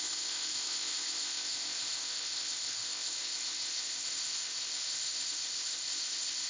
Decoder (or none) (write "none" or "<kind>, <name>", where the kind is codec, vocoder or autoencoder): codec, ZipCodec